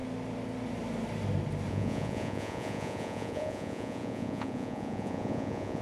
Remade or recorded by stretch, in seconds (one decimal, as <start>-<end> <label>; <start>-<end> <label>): 0.0-1.7 recorded; 1.7-5.8 remade